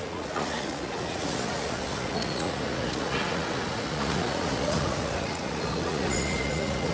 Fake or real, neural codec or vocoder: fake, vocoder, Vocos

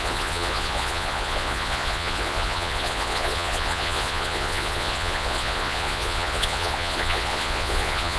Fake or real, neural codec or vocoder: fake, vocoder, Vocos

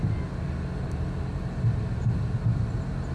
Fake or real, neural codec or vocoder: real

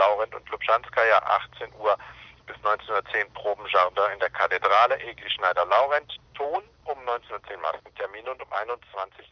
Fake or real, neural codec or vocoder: real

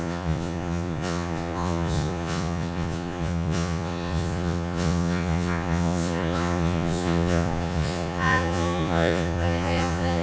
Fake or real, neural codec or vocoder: fake, vocoder, Vocos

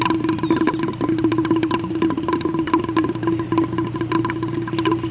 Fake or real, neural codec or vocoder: real